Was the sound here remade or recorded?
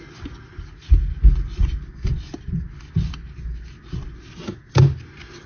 recorded